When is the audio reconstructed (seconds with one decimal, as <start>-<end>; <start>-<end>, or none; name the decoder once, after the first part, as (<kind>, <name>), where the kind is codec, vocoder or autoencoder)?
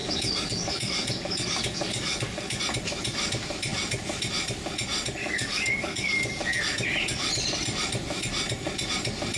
0.0-2.6 (codec, DAC); 5.2-6.6